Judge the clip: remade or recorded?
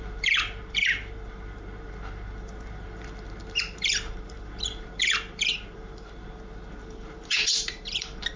remade